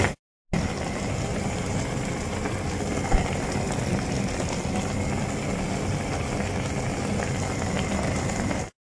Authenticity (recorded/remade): recorded